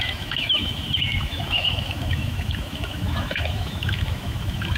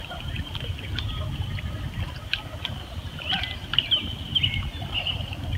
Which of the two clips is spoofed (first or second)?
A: first